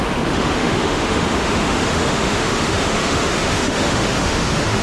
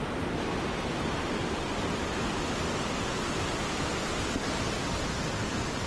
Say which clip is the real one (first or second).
second